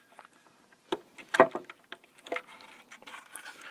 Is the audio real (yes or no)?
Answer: yes